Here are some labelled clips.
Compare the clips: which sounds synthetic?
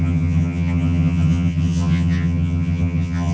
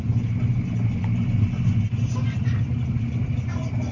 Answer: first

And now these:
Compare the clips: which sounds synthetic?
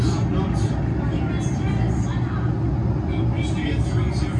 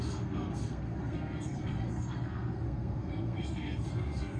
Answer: second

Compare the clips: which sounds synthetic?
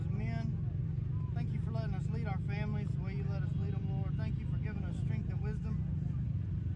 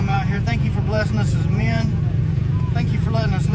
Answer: second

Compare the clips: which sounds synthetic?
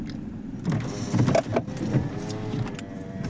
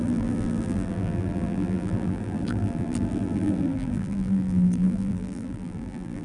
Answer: second